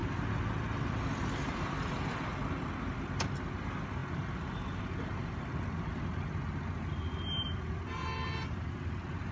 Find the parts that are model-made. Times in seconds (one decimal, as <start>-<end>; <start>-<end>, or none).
none